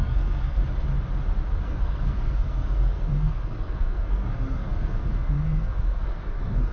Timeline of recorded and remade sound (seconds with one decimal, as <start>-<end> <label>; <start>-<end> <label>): 0.0-0.6 remade; 0.6-1.6 recorded; 1.6-6.7 remade